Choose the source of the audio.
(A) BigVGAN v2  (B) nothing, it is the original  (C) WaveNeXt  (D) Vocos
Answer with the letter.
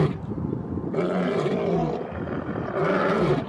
B